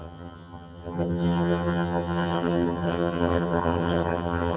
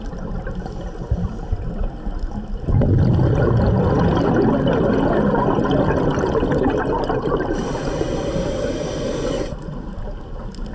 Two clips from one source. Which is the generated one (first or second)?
first